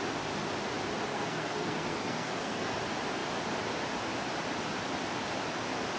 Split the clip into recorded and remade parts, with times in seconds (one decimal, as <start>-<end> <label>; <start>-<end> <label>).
0.0-1.1 recorded; 1.1-2.8 remade; 2.8-6.0 recorded